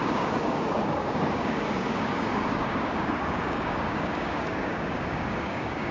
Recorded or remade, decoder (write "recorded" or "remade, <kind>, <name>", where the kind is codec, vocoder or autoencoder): remade, codec, DAC